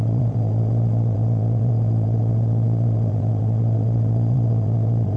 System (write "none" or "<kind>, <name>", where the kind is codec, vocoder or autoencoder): vocoder, Vocos